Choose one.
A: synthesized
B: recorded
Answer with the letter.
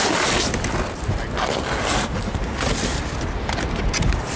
B